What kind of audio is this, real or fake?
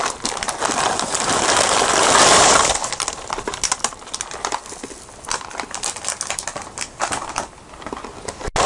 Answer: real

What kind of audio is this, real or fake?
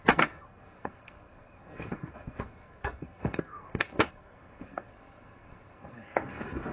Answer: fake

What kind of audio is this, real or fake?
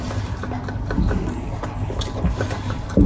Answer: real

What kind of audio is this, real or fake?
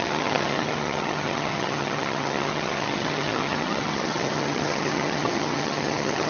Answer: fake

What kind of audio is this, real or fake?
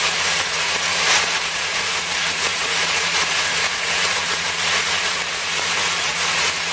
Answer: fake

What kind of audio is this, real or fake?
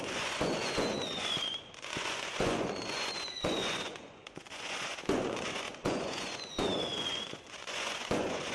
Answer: fake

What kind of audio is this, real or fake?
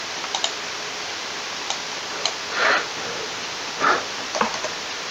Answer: fake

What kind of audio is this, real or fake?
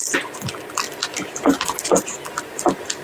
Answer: real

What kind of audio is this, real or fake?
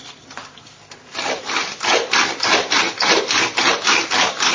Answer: fake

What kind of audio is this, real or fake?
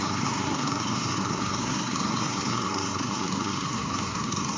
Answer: fake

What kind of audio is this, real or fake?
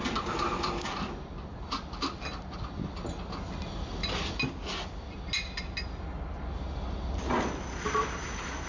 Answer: real